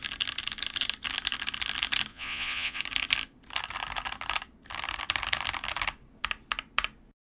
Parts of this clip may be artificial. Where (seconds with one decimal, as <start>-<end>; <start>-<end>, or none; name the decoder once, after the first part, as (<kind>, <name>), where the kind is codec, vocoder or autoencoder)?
2.1-2.8 (vocoder, Vocos)